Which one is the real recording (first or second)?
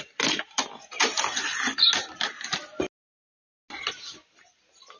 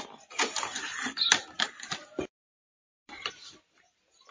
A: first